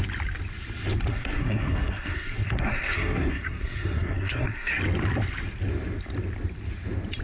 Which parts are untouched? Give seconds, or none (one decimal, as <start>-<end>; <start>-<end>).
0.0-1.1; 4.8-7.2